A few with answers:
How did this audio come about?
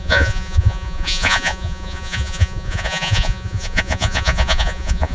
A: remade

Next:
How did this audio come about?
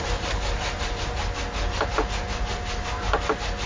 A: recorded